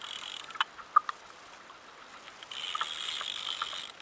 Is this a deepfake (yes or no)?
no